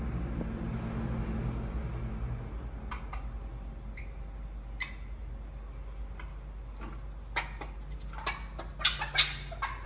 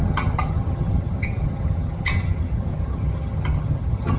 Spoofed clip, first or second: second